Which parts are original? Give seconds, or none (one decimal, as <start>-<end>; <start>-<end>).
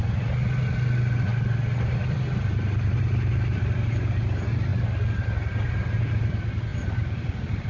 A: 0.0-7.7